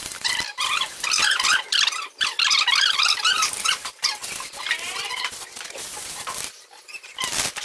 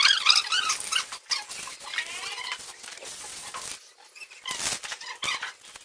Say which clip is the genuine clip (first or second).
second